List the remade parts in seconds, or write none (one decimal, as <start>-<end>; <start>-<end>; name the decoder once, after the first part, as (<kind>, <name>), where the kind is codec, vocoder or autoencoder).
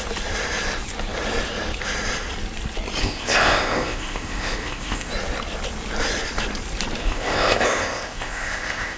3.0-5.1 (codec, ZipCodec); 7.0-9.0